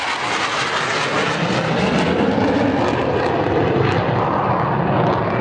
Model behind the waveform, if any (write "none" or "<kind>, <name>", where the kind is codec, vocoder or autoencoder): none